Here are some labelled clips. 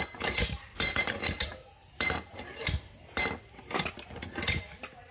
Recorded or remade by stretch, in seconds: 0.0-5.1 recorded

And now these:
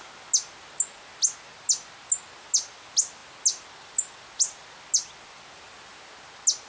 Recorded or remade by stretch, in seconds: 0.0-6.7 recorded